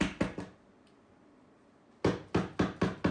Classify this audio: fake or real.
real